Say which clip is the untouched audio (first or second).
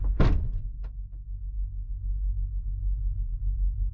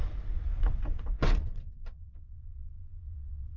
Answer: first